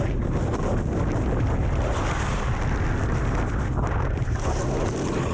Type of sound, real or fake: real